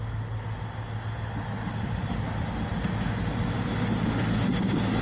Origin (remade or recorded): recorded